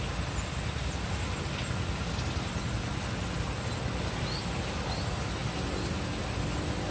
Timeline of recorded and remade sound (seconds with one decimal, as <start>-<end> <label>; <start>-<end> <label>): 0.0-6.9 recorded